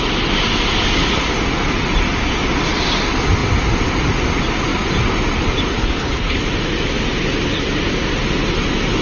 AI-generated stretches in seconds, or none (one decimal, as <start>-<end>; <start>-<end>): 5.8-6.4